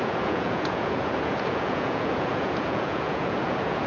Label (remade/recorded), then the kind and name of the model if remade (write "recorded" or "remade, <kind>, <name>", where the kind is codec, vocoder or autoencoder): remade, vocoder, Vocos